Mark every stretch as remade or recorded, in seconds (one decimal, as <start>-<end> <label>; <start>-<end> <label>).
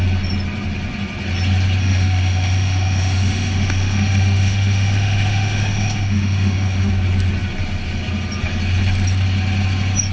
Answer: 0.0-1.8 recorded; 1.8-6.9 remade; 6.9-10.1 recorded